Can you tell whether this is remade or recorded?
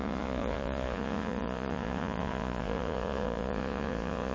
remade